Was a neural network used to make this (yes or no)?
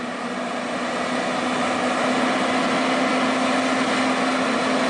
no